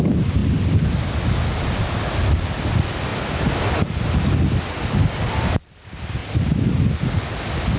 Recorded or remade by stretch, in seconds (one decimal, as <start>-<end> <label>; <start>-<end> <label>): 0.0-7.8 recorded